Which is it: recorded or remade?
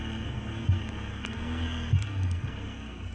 remade